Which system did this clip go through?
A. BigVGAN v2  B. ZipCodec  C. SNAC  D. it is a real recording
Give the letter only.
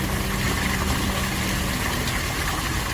D